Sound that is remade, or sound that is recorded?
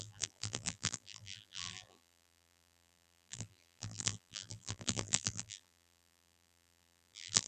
remade